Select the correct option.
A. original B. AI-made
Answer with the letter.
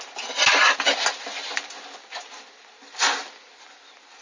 A